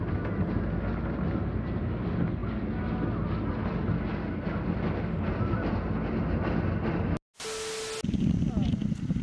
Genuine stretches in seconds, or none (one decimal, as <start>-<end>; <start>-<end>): 0.0-9.2